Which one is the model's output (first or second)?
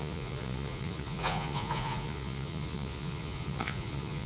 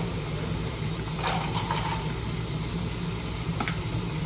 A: first